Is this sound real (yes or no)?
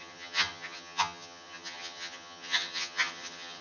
no